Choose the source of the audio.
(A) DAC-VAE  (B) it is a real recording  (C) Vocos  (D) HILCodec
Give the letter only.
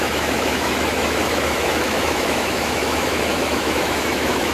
A